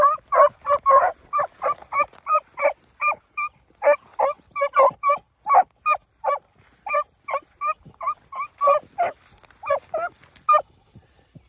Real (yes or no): yes